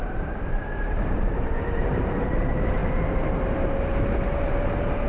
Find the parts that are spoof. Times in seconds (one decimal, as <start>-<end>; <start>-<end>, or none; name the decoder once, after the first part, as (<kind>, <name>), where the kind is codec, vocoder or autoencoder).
0.0-2.8 (vocoder, BigVGAN v2); 4.0-5.1